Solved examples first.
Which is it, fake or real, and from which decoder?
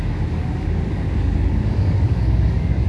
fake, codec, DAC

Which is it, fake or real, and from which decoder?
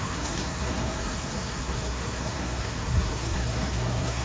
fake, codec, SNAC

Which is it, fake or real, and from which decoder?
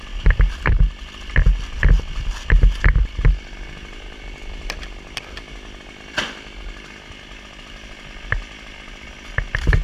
real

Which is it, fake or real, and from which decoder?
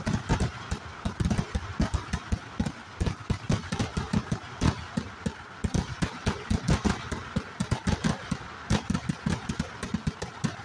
real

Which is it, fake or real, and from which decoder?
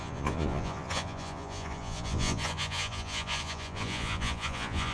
fake, vocoder, Vocos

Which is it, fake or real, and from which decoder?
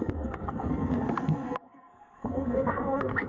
fake, codec, SNAC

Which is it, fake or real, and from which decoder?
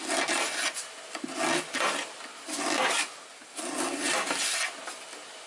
real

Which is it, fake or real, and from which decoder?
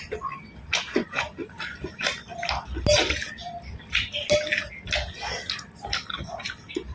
real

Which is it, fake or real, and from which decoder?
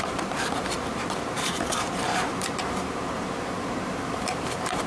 fake, vocoder, BigVGAN v2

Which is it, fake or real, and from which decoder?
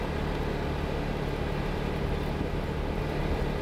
real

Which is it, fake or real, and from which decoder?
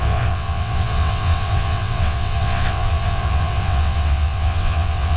fake, vocoder, WaveNeXt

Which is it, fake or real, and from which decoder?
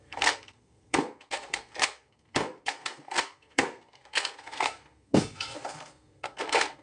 fake, codec, SNAC